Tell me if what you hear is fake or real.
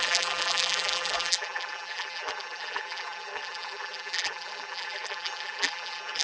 fake